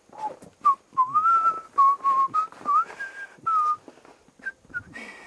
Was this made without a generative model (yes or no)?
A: yes